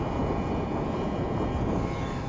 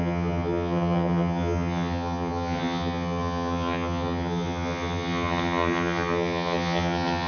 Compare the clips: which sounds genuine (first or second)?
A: first